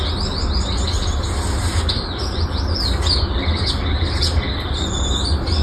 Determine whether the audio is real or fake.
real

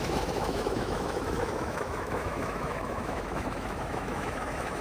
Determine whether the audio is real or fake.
fake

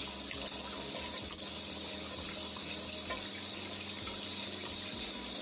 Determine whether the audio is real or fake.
real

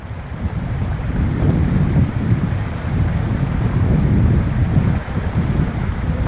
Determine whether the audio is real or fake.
fake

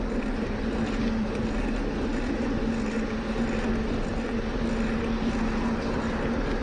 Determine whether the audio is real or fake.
real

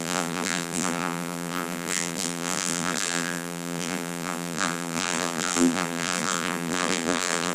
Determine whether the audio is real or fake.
fake